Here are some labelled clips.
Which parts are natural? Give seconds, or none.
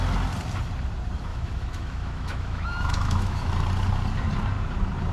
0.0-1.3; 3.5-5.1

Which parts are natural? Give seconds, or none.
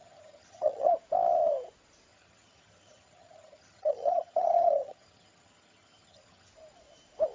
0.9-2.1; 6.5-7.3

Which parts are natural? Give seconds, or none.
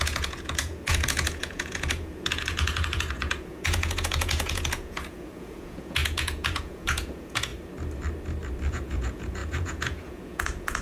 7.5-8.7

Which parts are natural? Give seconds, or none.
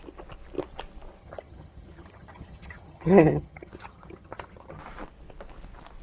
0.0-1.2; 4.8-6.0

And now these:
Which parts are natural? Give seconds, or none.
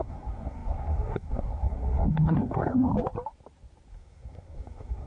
2.9-3.9